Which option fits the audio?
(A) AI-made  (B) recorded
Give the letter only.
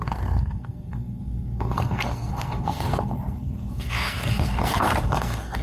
A